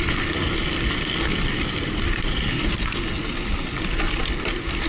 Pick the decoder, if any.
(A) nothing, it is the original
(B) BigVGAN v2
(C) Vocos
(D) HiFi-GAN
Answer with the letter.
A